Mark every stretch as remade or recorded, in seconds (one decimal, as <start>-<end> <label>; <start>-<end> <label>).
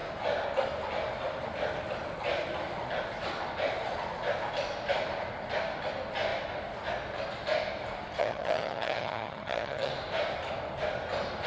0.0-8.2 recorded; 8.2-9.9 remade; 9.9-11.5 recorded